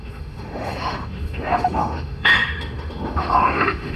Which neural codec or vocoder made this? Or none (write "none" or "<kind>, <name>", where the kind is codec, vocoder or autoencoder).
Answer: autoencoder, DAC-VAE